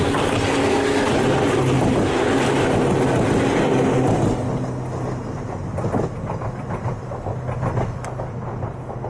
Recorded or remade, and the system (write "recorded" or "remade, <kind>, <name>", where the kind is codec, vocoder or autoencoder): recorded